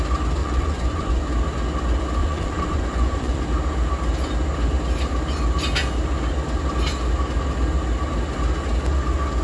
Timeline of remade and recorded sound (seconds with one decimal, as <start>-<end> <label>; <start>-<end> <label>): 0.0-0.4 recorded; 0.4-1.2 remade; 1.2-2.2 recorded; 2.2-3.4 remade; 3.4-9.4 recorded